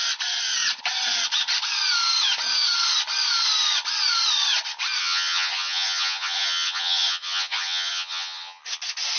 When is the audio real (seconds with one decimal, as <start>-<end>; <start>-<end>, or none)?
0.0-5.0; 8.6-9.2